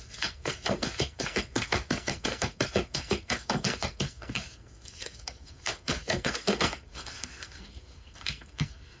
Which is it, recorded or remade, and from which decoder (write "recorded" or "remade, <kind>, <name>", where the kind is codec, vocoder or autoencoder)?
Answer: remade, codec, SNAC